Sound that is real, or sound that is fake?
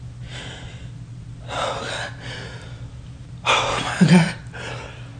real